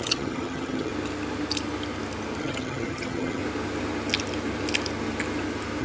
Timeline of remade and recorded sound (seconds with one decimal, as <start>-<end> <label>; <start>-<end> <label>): 0.0-0.9 remade; 0.9-2.4 recorded; 2.4-3.4 remade; 3.4-5.8 recorded